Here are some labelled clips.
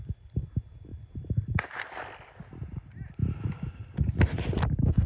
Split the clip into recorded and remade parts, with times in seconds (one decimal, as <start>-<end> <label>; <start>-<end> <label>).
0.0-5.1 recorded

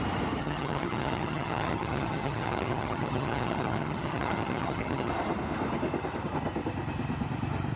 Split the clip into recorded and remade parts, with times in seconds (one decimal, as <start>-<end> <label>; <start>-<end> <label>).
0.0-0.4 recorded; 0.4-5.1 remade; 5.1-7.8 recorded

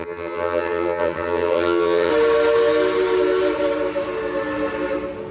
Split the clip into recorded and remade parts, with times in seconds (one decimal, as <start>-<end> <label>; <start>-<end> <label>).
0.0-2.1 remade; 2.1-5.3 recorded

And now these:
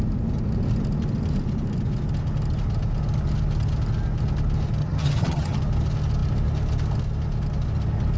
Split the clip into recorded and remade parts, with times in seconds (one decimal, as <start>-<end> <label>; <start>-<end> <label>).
0.0-4.8 recorded; 4.8-5.6 remade; 5.6-8.2 recorded

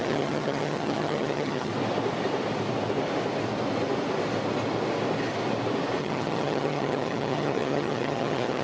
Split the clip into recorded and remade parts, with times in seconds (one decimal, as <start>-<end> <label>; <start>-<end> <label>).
0.0-1.7 remade; 1.7-6.0 recorded; 6.0-8.6 remade

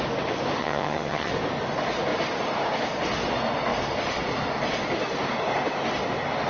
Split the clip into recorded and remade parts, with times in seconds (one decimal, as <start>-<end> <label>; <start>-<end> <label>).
0.0-0.6 recorded; 0.6-1.3 remade; 1.3-6.5 recorded